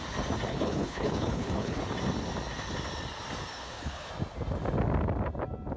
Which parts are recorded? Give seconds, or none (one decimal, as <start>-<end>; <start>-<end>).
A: 0.0-0.5; 1.8-3.5; 4.1-5.8